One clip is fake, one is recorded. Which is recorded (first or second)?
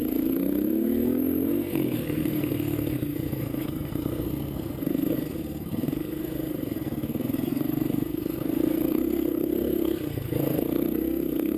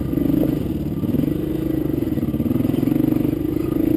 second